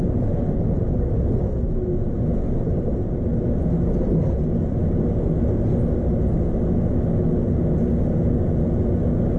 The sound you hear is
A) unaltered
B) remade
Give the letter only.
A